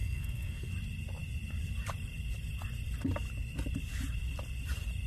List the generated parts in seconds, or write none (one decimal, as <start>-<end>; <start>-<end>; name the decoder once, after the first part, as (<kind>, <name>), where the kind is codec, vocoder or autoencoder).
0.0-0.7 (codec, SNAC)